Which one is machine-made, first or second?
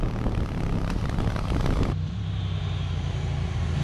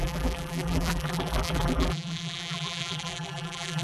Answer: second